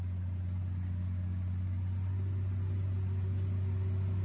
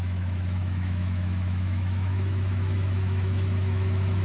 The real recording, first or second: first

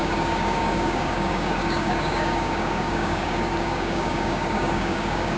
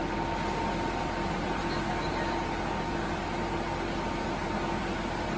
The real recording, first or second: second